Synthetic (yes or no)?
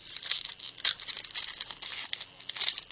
no